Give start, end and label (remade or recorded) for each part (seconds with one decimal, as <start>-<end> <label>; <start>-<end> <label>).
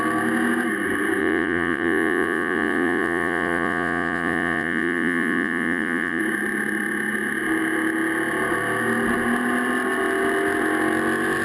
0.0-1.2 recorded; 1.2-6.2 remade; 6.2-11.4 recorded